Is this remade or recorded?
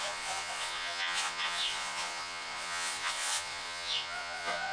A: remade